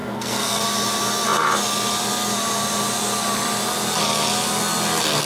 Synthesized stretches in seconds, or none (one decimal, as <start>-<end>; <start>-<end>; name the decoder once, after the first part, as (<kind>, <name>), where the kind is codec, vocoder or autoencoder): 0.0-0.6 (codec, SNAC)